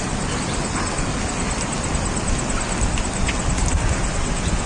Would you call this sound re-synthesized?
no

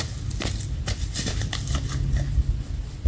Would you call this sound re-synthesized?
no